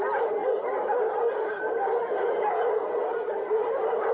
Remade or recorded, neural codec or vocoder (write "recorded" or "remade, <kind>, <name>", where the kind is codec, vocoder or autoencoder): recorded